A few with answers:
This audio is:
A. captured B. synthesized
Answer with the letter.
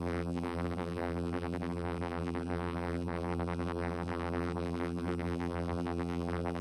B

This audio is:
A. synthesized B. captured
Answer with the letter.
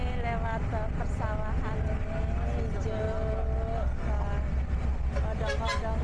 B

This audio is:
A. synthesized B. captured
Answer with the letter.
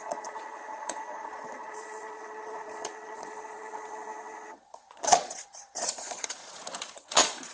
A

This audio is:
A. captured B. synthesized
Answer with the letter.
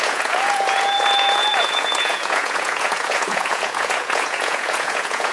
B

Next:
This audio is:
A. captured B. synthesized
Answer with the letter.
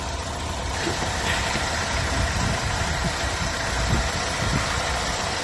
A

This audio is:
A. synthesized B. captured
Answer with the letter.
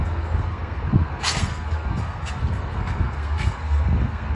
A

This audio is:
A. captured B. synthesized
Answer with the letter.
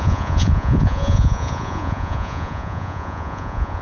B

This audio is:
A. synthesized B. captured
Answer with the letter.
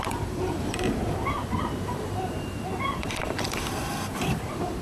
A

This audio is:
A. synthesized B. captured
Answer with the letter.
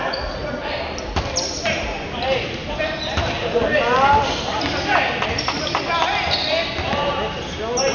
B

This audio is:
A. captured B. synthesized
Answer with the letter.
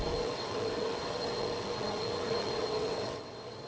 B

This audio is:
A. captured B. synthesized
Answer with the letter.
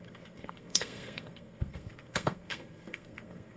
B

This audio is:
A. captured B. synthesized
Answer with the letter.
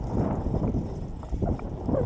A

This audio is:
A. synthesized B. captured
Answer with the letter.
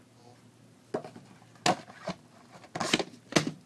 B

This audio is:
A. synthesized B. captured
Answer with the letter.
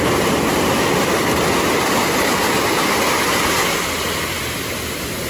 B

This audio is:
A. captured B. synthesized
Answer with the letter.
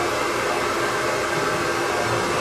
A